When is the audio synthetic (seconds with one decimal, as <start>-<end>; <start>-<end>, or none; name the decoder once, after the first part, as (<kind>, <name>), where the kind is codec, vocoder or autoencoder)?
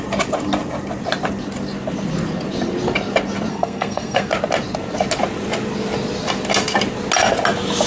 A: 3.5-4.3 (codec, SNAC)